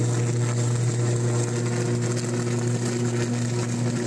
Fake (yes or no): no